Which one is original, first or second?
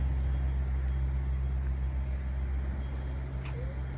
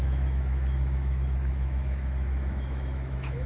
first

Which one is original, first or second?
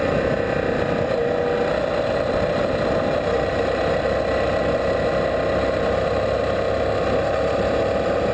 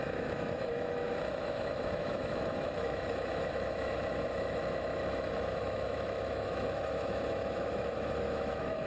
first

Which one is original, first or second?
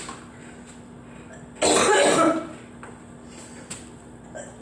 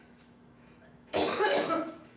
first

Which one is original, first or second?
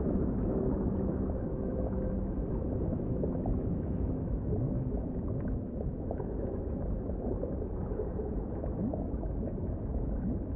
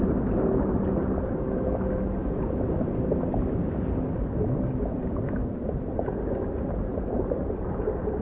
second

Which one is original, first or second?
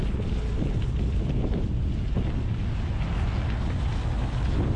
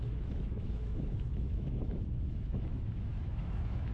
first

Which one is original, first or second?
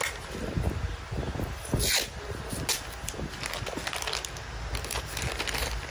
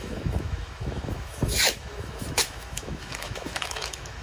first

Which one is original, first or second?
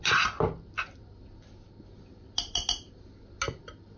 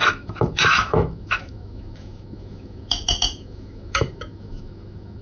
first